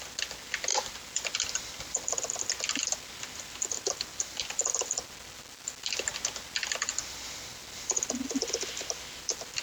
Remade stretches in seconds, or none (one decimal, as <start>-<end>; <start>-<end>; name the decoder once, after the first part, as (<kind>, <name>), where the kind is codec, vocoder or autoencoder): 0.7-1.7 (vocoder, BigVGAN v2)